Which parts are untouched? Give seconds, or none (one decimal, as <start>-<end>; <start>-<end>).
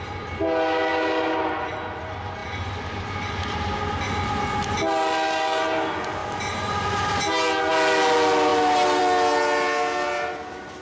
0.0-10.8